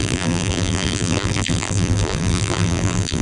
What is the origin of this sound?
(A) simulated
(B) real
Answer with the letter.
A